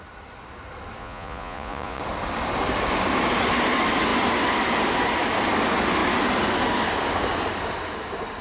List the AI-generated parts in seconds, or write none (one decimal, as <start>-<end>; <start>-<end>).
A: 1.0-2.0